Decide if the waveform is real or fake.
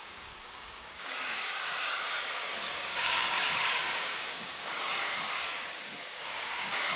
fake